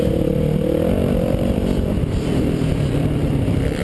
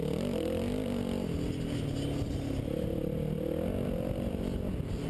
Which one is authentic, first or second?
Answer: second